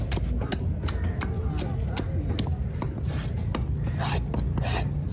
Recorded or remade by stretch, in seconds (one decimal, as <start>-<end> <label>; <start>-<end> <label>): 0.0-5.1 recorded